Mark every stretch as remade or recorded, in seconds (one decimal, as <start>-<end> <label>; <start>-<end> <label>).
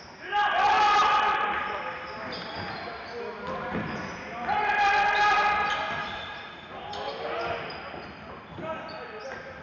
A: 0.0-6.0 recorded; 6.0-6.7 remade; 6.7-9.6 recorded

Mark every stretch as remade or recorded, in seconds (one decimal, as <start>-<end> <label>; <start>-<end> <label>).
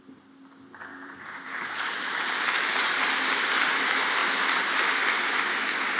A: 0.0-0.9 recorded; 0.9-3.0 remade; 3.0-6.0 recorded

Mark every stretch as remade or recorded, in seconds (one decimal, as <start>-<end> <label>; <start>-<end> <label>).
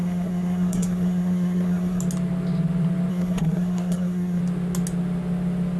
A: 0.0-2.0 remade; 2.0-3.1 recorded; 3.1-4.4 remade; 4.4-5.8 recorded